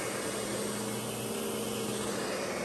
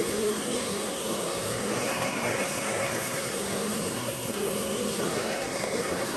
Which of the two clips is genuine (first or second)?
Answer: first